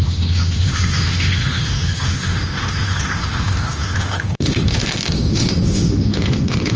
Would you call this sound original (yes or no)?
no